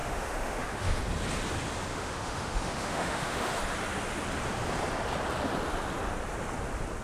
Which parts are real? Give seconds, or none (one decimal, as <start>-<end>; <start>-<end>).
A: 1.0-1.9; 3.6-7.0